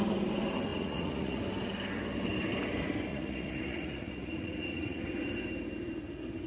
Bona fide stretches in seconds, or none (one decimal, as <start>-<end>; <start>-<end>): 0.0-0.7; 1.4-3.1; 5.0-6.5